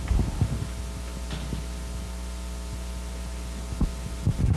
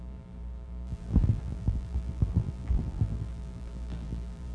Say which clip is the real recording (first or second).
first